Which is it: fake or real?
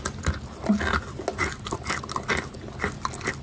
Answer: real